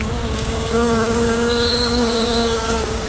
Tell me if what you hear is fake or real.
fake